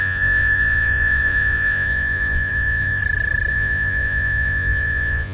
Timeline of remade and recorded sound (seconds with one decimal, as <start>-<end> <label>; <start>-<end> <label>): 0.0-3.0 remade; 3.0-3.5 recorded; 3.5-5.3 remade

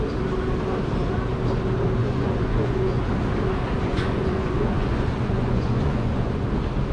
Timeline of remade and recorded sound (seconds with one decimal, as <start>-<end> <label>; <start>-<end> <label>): 0.0-2.0 recorded; 2.0-3.1 remade; 3.1-3.9 recorded; 3.9-6.5 remade; 6.5-6.9 recorded